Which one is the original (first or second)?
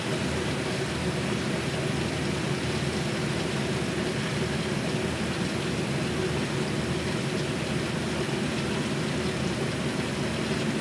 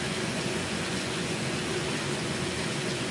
first